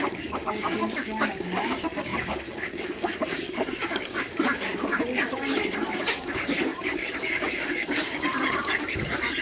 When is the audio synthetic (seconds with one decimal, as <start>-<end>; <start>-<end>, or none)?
0.0-9.4